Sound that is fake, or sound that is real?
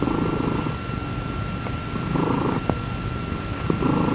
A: real